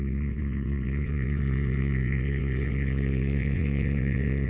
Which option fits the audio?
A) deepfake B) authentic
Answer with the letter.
A